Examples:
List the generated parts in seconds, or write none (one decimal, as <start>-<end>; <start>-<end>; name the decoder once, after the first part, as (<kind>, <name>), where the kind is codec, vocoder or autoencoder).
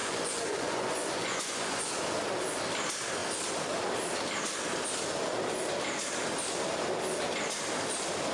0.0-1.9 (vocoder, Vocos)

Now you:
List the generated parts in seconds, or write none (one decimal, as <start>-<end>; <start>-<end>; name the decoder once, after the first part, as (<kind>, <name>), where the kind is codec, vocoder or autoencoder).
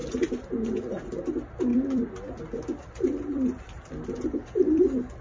0.0-1.1 (vocoder, BigVGAN v2); 1.7-4.8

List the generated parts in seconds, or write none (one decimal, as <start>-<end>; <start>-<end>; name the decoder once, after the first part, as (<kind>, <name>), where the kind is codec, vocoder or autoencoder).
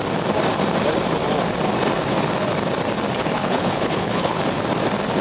3.4-4.4 (codec, HILCodec)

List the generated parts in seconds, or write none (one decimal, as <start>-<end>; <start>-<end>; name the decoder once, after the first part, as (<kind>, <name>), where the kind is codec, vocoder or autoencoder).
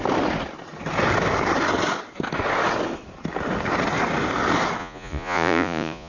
4.8-6.1 (vocoder, Vocos)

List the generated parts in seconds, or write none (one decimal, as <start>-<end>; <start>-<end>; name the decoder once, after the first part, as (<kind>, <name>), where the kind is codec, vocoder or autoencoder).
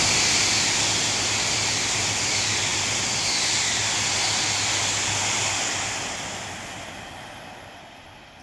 none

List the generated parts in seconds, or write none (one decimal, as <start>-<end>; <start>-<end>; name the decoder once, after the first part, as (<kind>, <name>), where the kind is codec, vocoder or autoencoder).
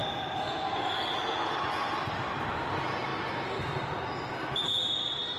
none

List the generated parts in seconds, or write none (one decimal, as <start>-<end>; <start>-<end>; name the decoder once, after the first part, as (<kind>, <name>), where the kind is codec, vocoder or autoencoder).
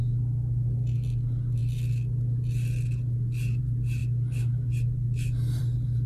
none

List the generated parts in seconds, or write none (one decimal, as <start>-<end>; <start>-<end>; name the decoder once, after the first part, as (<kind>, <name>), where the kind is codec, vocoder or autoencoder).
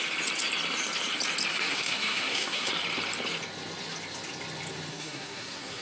1.5-2.7 (codec, SNAC); 4.9-5.8